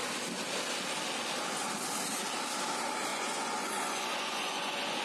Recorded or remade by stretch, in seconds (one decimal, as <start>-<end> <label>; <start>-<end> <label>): 0.0-3.1 recorded; 3.1-5.0 remade